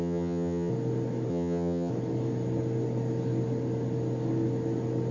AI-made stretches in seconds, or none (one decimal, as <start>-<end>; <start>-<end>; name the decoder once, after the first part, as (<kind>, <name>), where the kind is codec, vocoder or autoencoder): 0.0-0.7 (vocoder, HiFi-GAN); 1.3-1.9